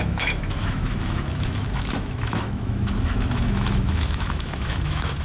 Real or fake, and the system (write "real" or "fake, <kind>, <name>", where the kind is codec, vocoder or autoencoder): fake, autoencoder, DAC-VAE